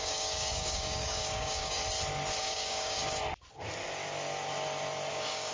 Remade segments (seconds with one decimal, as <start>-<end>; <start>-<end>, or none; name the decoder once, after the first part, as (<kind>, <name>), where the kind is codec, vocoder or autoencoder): 0.0-1.8 (codec, DAC); 2.4-3.0; 5.1-5.5